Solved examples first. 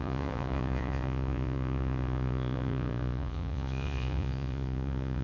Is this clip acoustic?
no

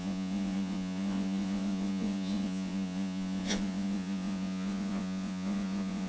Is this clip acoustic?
no